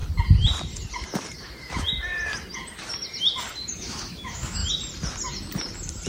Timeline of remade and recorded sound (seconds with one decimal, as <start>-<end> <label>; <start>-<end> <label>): 0.0-3.7 recorded; 3.7-4.6 remade; 4.6-6.1 recorded